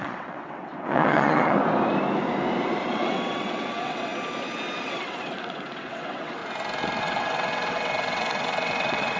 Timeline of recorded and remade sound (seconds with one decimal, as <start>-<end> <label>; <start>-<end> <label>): 0.0-1.6 remade; 1.6-2.9 recorded; 2.9-4.1 remade; 4.1-4.8 recorded; 4.8-6.4 remade; 6.4-7.0 recorded; 7.0-9.2 remade